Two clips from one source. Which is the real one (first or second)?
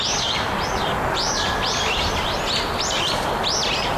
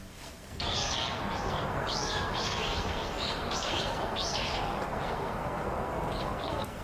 first